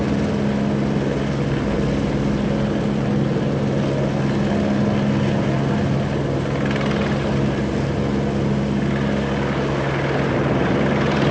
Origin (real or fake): real